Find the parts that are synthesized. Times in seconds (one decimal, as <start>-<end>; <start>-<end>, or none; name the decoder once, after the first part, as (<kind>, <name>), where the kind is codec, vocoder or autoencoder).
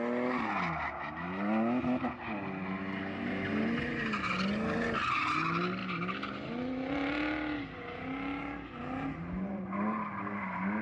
none